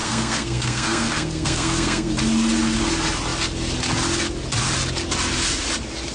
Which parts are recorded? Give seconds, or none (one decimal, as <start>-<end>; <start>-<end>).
2.1-6.1